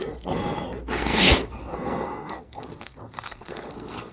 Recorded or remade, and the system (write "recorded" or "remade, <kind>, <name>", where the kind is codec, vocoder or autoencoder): remade, codec, SNAC